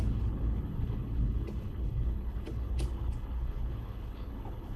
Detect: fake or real fake